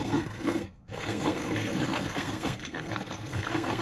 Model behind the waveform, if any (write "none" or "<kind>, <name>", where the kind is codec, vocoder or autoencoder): codec, SNAC